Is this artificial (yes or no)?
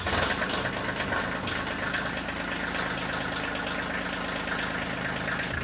no